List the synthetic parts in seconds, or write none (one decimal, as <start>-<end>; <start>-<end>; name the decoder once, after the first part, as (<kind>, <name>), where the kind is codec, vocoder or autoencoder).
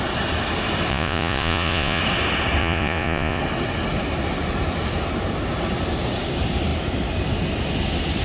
0.9-2.0 (vocoder, Vocos); 2.6-3.4